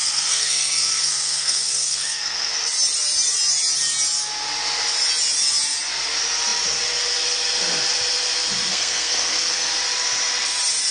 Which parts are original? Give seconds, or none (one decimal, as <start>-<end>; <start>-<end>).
2.5-8.7; 9.7-10.9